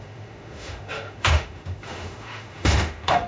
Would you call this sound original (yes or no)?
no